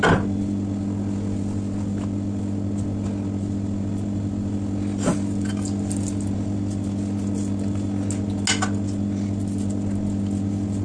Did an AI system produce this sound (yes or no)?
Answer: no